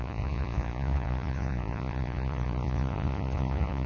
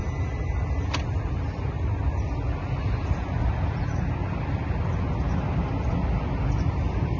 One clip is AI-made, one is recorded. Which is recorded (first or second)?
second